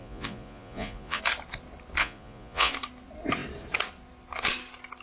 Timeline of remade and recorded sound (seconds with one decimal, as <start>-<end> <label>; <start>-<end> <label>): 0.0-1.2 remade; 1.2-2.0 recorded; 2.0-2.7 remade; 2.7-5.0 recorded